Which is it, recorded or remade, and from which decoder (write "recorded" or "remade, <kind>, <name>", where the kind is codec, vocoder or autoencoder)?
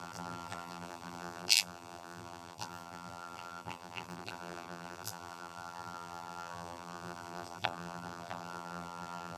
remade, vocoder, BigVGAN v2